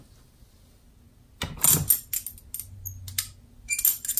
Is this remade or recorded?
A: recorded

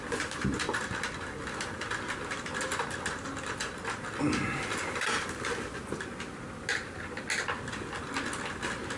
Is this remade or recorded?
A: recorded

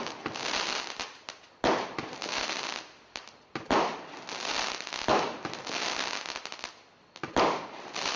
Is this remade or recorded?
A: recorded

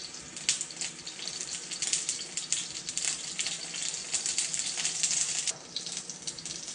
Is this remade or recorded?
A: recorded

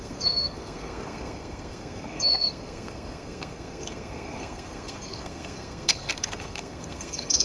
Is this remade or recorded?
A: remade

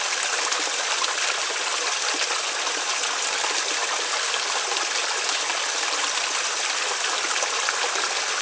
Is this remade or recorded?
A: recorded